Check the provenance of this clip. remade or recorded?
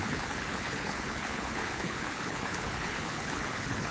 remade